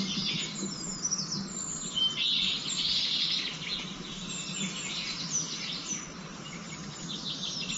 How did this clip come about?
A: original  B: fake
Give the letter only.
A